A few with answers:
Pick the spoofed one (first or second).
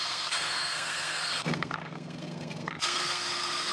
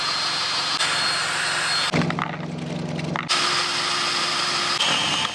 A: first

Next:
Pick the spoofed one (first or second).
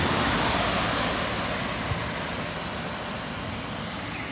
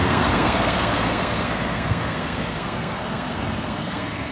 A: second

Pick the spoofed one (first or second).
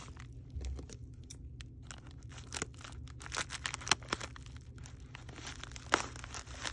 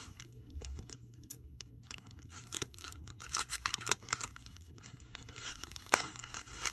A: second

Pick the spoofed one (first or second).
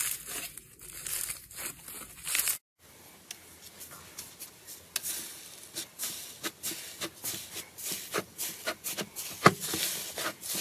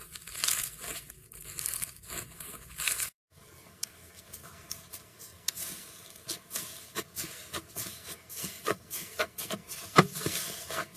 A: second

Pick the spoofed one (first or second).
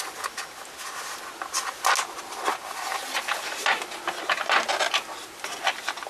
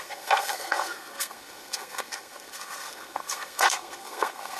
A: second